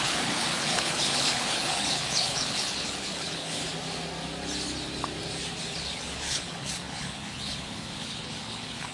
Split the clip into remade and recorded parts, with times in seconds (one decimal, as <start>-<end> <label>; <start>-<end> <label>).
0.0-3.7 remade; 3.7-5.6 recorded; 5.6-8.9 remade

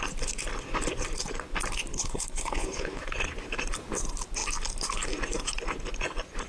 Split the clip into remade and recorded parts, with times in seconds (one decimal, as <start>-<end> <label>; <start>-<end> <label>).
0.0-1.9 recorded; 1.9-3.0 remade; 3.0-6.5 recorded

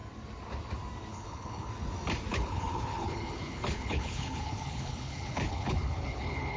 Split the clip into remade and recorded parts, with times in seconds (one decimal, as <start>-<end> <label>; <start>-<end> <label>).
0.0-1.1 recorded; 1.1-1.7 remade; 1.7-2.3 recorded; 2.3-6.6 remade

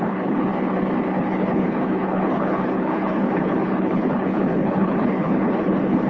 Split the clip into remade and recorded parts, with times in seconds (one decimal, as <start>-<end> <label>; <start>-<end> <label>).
0.0-0.5 remade; 0.5-1.2 recorded; 1.2-6.1 remade

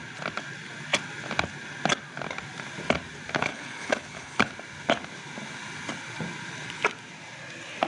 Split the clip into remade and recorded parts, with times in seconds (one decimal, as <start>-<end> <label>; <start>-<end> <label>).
0.0-3.4 recorded; 3.4-4.5 remade; 4.5-7.9 recorded